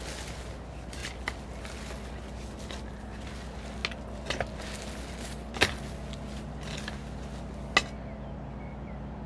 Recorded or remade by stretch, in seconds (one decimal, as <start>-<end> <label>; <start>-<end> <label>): 0.0-9.3 recorded